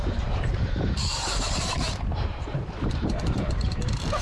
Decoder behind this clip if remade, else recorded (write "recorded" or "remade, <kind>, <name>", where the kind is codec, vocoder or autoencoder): remade, vocoder, BigVGAN v2